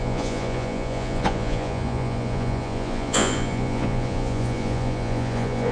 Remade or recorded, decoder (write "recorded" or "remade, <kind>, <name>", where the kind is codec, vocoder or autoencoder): remade, vocoder, Vocos